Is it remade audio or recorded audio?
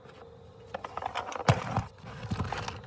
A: recorded